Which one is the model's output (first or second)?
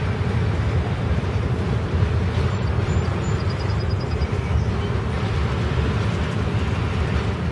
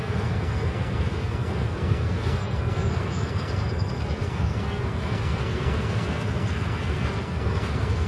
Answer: second